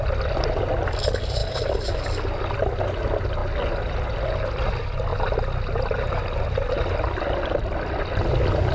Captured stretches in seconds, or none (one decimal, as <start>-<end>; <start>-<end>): 0.0-8.7